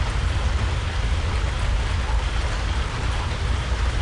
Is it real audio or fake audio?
real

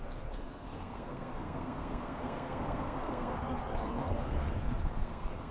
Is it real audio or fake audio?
fake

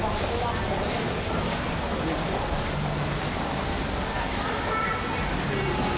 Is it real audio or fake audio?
real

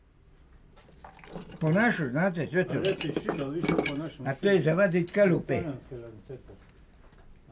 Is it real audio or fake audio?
real